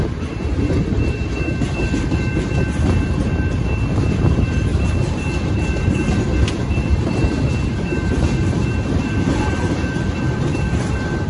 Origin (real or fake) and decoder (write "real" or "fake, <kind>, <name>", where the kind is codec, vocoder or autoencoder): fake, vocoder, BigVGAN v2